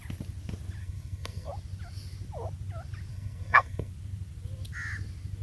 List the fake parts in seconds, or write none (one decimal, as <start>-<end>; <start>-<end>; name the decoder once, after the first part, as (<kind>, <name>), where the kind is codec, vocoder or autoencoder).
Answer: 0.8-1.5 (codec, SNAC); 3.1-3.9